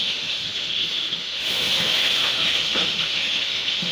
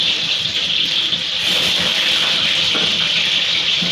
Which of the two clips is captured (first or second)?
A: second